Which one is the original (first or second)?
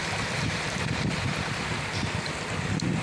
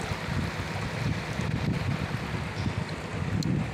second